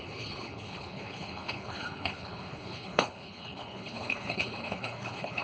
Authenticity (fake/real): fake